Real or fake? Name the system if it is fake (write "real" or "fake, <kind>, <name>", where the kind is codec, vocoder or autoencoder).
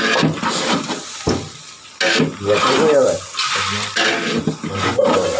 real